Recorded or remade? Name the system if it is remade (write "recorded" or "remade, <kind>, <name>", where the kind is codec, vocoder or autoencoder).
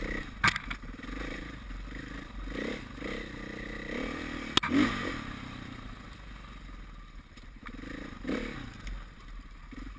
recorded